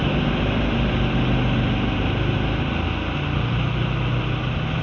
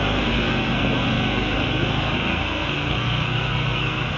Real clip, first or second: first